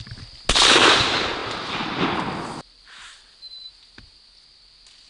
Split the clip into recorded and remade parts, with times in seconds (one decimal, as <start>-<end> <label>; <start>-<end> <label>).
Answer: 0.0-5.1 recorded